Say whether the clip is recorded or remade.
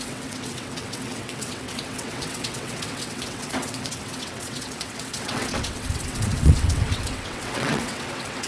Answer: remade